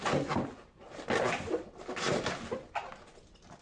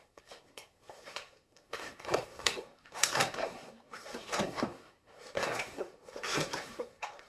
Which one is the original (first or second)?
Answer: first